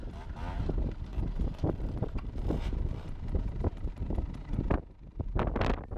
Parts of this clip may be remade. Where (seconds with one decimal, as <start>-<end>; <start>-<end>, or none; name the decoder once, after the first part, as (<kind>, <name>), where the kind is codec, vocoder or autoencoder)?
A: 1.1-4.0 (vocoder, BigVGAN v2)